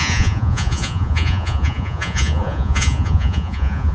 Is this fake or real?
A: fake